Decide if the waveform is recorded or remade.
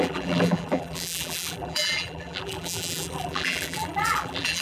remade